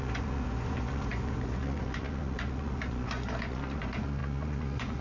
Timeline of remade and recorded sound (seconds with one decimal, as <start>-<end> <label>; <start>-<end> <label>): 0.0-5.0 remade